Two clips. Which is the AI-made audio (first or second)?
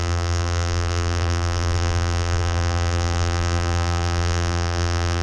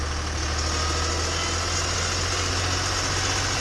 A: first